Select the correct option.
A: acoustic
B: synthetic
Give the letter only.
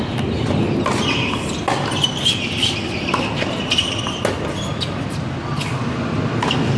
A